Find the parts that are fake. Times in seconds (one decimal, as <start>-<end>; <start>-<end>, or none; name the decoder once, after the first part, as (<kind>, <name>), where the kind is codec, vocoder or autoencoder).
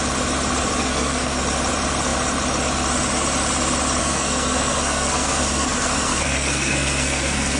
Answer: 0.8-1.4 (codec, SNAC); 4.0-7.6